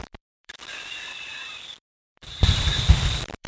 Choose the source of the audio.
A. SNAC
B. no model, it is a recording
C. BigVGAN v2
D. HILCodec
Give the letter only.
C